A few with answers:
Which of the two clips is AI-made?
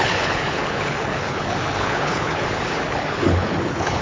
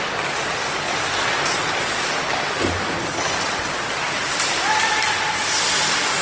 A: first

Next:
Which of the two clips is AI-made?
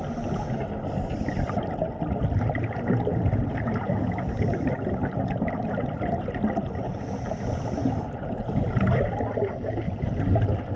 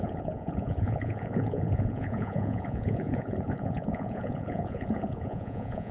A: second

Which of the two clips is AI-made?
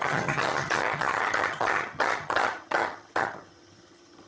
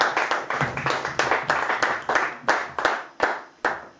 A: first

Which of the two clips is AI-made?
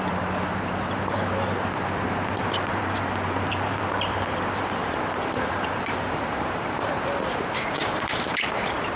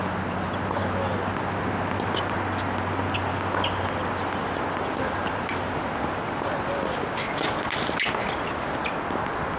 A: first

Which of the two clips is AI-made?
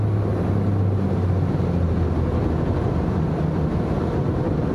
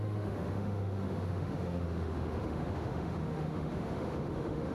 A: second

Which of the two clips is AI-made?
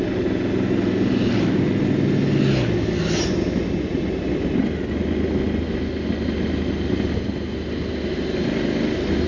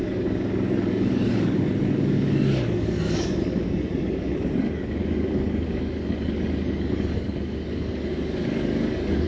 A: second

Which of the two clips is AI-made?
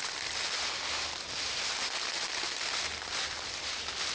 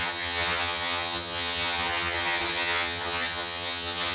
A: second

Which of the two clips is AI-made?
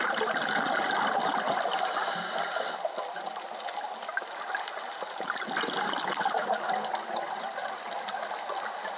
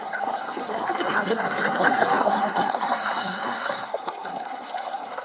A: second